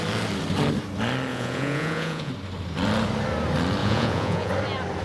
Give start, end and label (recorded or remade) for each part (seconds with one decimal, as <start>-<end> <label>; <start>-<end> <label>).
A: 0.0-1.3 recorded; 1.3-2.3 remade; 2.3-3.8 recorded; 3.8-4.5 remade; 4.5-5.0 recorded